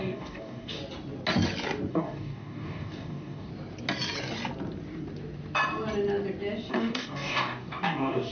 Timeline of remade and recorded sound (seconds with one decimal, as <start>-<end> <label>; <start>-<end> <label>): 0.0-0.8 remade; 0.8-1.9 recorded; 1.9-3.5 remade; 3.5-6.7 recorded; 6.7-8.3 remade